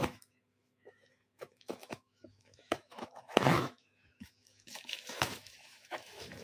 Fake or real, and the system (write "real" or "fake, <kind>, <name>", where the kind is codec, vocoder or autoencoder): fake, autoencoder, DAC-VAE